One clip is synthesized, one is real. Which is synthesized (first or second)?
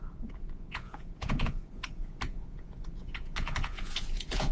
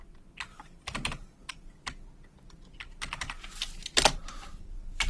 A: first